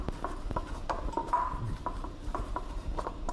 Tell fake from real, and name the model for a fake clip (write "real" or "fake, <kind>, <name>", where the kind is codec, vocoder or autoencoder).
real